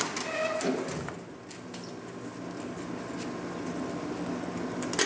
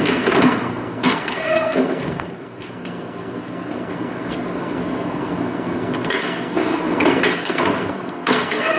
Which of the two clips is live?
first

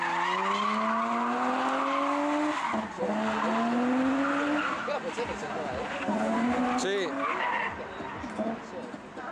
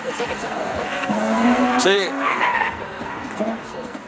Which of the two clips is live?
first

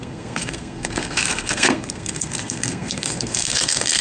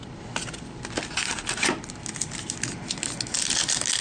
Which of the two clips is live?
second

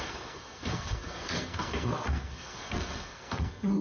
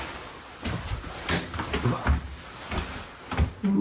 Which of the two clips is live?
second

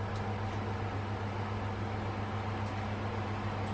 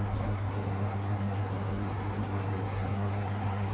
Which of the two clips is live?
first